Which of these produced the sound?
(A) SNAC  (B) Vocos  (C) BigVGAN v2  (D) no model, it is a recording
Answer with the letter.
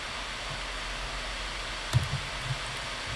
D